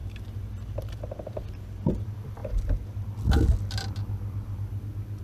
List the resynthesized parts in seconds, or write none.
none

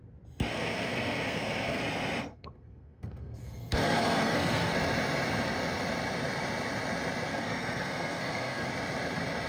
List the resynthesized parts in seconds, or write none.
0.5-1.8; 2.3-4.7; 7.3-8.7